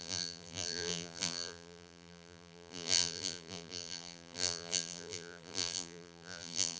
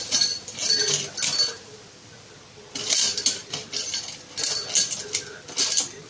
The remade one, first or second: first